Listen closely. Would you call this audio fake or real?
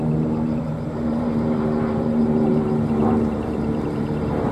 fake